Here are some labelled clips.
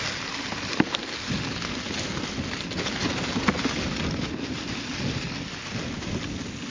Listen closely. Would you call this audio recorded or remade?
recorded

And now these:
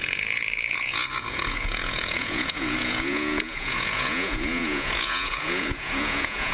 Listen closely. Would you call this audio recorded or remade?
remade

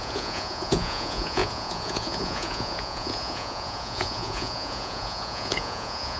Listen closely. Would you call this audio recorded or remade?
remade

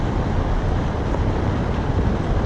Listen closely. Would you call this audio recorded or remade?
recorded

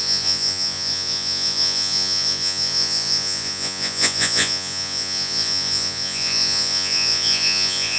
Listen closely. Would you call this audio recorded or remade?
remade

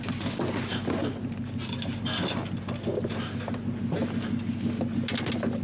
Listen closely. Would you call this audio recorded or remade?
recorded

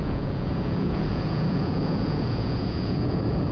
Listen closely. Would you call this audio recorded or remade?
remade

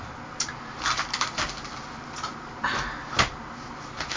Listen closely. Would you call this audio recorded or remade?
recorded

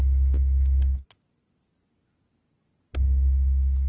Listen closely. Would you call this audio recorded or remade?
recorded